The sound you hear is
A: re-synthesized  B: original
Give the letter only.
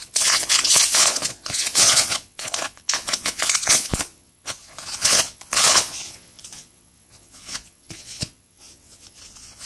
A